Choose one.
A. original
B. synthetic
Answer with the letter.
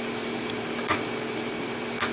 A